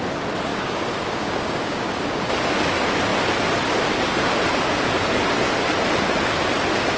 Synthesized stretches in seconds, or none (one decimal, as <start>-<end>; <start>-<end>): 0.5-2.2